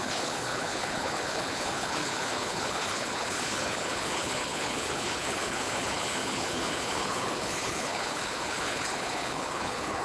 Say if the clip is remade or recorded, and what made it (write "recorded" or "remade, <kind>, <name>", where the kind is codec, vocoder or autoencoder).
remade, codec, HILCodec